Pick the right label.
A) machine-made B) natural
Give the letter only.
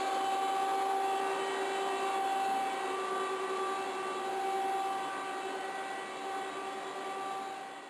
B